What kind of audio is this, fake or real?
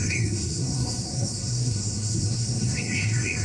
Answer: fake